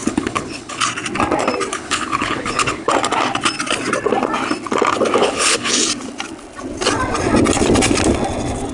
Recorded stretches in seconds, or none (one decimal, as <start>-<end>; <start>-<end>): 0.8-1.7; 2.9-5.2; 5.8-8.7